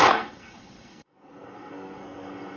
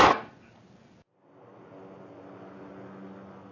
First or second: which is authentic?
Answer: second